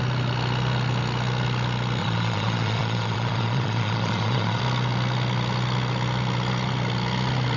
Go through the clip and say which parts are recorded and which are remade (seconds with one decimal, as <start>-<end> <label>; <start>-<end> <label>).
0.0-2.0 recorded; 2.0-4.6 remade; 4.6-7.6 recorded